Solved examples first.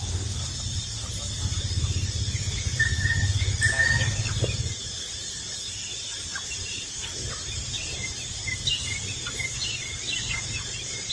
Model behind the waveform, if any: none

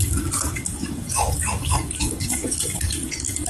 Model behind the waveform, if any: codec, DAC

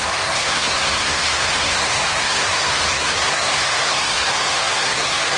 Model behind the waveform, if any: codec, SNAC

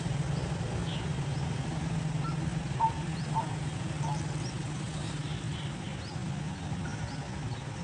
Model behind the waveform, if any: none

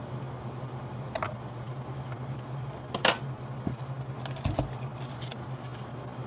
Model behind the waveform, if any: none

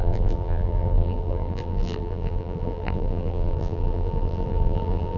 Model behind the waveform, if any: vocoder, BigVGAN v2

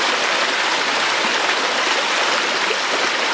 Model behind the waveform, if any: none